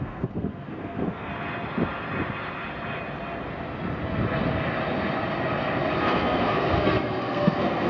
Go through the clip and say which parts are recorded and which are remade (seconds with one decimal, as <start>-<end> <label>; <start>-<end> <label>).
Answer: 0.0-1.3 remade; 1.3-6.0 recorded; 6.0-7.9 remade